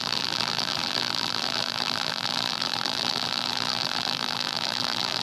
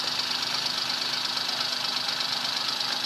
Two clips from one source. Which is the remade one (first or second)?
first